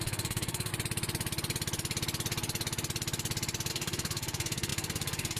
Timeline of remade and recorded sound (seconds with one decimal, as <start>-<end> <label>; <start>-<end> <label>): 0.0-0.7 remade; 0.7-3.7 recorded; 3.7-5.4 remade

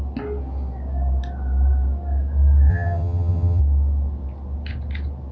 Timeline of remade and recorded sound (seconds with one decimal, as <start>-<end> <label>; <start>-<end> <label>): 0.0-2.7 recorded; 2.7-3.6 remade; 3.6-5.3 recorded

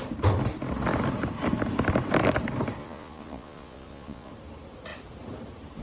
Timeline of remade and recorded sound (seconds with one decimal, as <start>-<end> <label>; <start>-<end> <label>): 0.0-2.8 recorded; 2.8-4.3 remade; 4.3-5.8 recorded

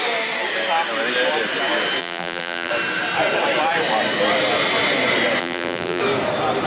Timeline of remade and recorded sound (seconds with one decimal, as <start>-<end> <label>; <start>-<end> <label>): 0.0-2.0 recorded; 2.0-2.7 remade; 2.7-5.4 recorded; 5.4-6.0 remade; 6.0-6.7 recorded

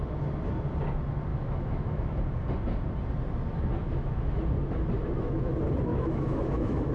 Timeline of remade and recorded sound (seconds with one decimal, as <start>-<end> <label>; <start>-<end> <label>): 0.0-1.3 recorded; 1.3-2.2 remade; 2.2-3.8 recorded; 3.8-4.4 remade; 4.4-5.0 recorded; 5.0-5.5 remade; 5.5-5.9 recorded; 5.9-6.9 remade